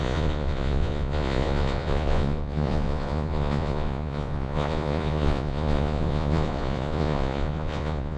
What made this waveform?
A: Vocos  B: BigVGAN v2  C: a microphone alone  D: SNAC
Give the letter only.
A